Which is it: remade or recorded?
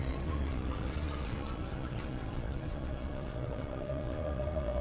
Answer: remade